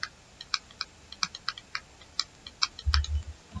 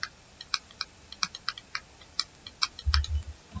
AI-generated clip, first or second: second